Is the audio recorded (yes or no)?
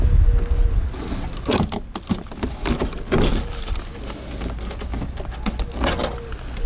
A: yes